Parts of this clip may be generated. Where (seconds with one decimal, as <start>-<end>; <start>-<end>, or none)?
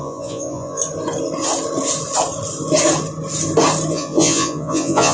0.0-0.8; 3.9-5.1